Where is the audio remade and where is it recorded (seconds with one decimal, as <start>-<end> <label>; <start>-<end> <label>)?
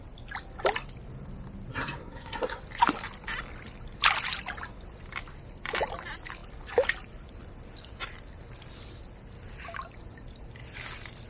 0.0-1.7 recorded; 1.7-2.6 remade; 2.6-11.3 recorded